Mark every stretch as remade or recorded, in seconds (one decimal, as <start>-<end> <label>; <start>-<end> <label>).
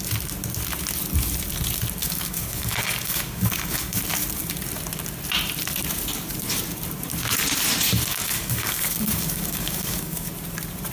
0.0-2.0 recorded; 2.0-4.0 remade; 4.0-8.1 recorded; 8.1-10.3 remade; 10.3-10.9 recorded